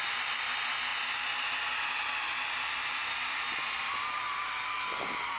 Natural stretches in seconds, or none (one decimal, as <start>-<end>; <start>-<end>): 0.0-5.4